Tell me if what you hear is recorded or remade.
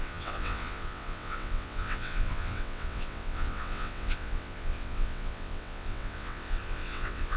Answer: remade